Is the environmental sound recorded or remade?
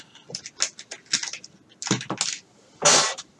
recorded